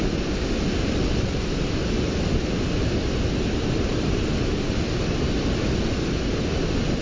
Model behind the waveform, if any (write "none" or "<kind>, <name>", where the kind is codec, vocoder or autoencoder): none